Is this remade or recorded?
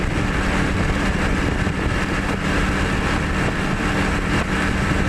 recorded